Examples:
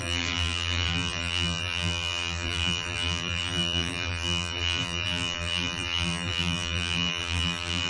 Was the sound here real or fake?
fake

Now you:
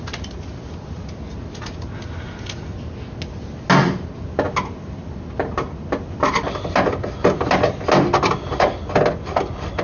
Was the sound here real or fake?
real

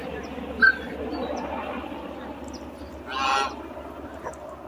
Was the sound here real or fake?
real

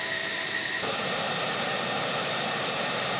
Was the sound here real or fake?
real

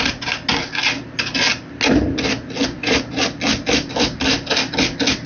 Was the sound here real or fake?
real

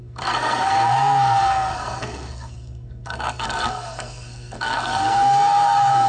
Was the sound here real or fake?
fake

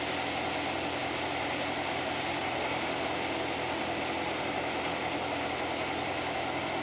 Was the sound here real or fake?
real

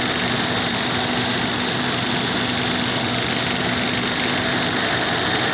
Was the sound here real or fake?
real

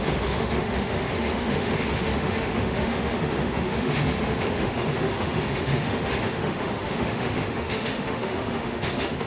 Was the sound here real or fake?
fake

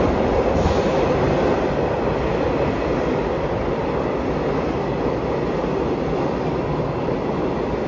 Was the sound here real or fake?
real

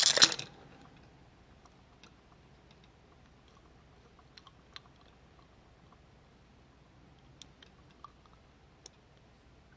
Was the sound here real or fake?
real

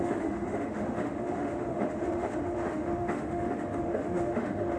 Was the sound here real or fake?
fake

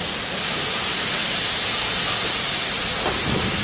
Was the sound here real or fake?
real